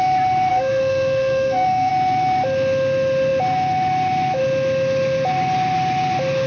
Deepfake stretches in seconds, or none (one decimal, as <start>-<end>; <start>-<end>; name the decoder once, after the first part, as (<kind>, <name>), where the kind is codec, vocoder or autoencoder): 0.5-1.9 (codec, SNAC)